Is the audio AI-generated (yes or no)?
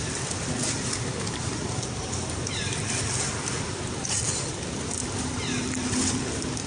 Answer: no